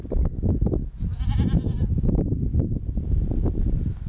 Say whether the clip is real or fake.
real